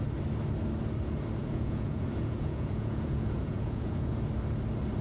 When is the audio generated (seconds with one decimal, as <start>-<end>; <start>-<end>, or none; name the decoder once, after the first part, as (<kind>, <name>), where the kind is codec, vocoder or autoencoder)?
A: 1.4-4.3 (vocoder, Vocos)